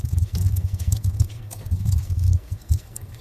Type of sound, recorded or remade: remade